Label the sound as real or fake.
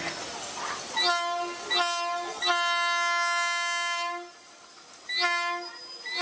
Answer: real